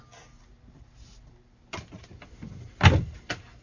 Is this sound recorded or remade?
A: recorded